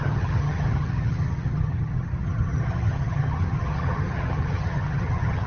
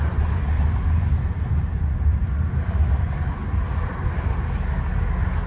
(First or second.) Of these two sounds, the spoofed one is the first